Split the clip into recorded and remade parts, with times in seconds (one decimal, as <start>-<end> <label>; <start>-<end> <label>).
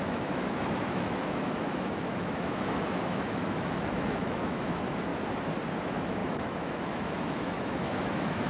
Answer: 0.0-5.1 remade; 5.1-5.8 recorded; 5.8-8.5 remade